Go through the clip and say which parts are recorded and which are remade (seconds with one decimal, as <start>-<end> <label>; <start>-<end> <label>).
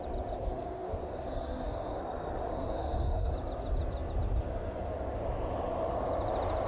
0.0-0.4 recorded; 0.4-2.0 remade; 2.0-2.5 recorded; 2.5-3.3 remade; 3.3-6.7 recorded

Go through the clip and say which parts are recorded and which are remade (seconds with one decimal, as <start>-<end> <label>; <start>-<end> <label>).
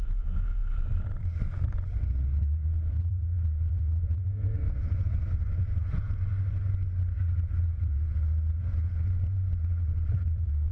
0.0-0.6 remade; 0.6-2.7 recorded; 2.7-6.3 remade; 6.3-7.6 recorded; 7.6-8.1 remade; 8.1-8.6 recorded; 8.6-10.7 remade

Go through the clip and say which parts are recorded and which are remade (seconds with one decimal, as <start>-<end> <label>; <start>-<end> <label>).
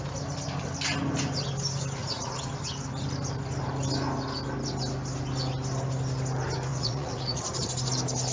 0.0-2.0 recorded; 2.0-2.5 remade; 2.5-6.7 recorded; 6.7-7.4 remade; 7.4-8.3 recorded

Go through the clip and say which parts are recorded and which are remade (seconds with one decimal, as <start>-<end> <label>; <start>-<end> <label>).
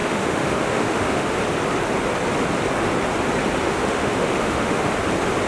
0.0-1.3 remade; 1.3-3.6 recorded; 3.6-4.9 remade; 4.9-5.5 recorded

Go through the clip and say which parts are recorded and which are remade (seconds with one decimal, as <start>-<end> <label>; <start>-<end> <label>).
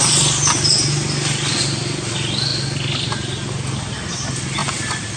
0.0-5.2 recorded